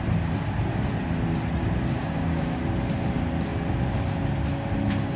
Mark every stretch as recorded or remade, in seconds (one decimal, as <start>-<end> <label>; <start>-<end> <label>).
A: 0.0-2.0 recorded; 2.0-2.6 remade; 2.6-5.2 recorded